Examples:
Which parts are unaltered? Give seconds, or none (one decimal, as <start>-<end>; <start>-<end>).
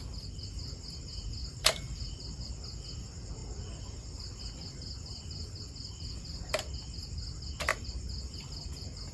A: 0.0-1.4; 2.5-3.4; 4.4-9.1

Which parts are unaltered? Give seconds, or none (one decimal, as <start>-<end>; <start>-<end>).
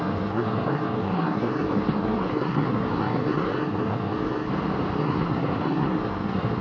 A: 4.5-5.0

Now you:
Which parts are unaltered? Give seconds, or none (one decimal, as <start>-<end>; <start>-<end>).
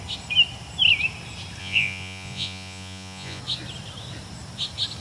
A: 0.0-1.6; 3.4-5.0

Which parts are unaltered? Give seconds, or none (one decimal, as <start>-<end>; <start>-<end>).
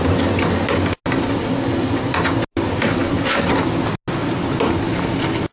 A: 0.0-5.5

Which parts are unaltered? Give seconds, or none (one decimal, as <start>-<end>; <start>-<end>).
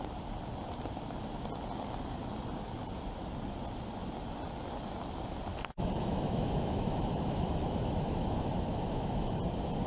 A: 0.0-5.5; 9.4-9.9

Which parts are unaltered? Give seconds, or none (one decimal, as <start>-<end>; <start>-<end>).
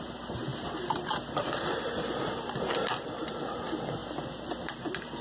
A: 0.0-5.2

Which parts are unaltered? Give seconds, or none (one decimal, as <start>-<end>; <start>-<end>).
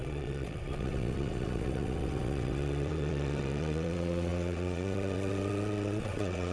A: none